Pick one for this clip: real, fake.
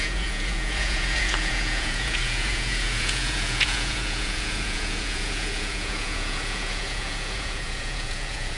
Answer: fake